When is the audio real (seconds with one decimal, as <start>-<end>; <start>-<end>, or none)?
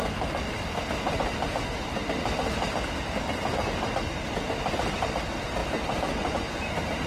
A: 0.0-7.1